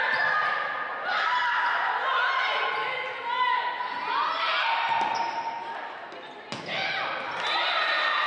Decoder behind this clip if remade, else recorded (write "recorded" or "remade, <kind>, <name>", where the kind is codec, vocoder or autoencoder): recorded